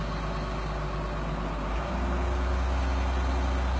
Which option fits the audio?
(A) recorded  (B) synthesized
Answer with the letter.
A